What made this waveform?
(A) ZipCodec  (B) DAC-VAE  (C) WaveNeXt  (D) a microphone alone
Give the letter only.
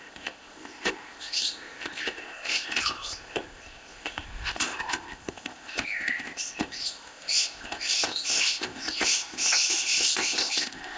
A